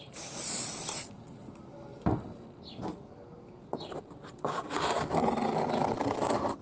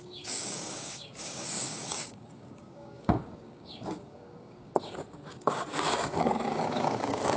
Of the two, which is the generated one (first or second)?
second